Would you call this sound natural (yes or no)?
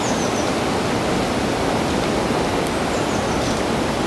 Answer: yes